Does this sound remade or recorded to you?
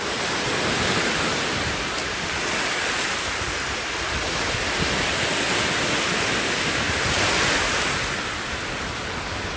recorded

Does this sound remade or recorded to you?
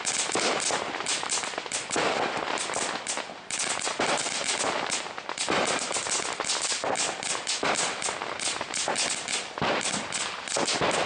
recorded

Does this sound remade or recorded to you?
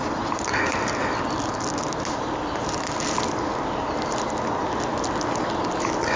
recorded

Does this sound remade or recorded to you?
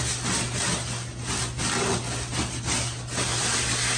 recorded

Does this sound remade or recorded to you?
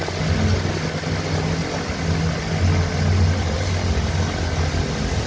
recorded